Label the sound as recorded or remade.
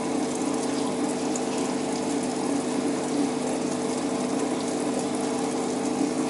recorded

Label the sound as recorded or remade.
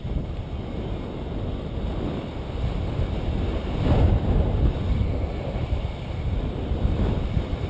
recorded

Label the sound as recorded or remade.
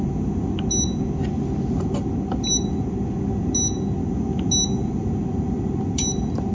recorded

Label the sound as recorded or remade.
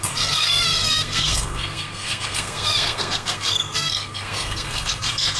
remade